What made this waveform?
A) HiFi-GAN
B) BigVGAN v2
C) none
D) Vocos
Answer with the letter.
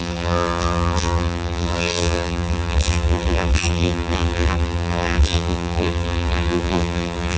B